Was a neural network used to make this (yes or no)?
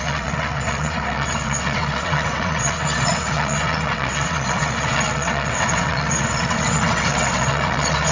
yes